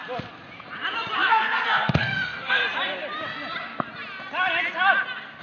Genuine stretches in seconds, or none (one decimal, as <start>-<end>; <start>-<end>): 0.0-1.3; 2.6-5.4